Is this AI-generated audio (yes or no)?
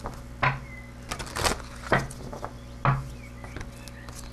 no